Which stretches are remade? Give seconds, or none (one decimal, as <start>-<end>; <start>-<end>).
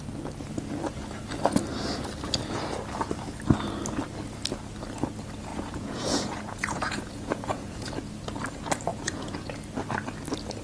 5.5-7.9; 8.9-9.5